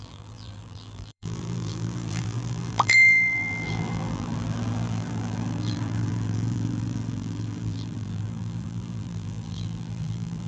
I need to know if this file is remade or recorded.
remade